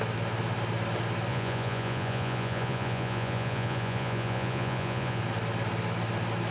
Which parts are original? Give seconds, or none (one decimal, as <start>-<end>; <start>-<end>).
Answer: 0.0-1.3; 5.2-6.5